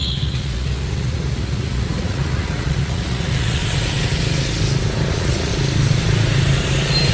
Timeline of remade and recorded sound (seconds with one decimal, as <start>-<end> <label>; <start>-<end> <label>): 0.0-3.6 remade; 3.6-5.1 recorded; 5.1-5.5 remade; 5.5-7.1 recorded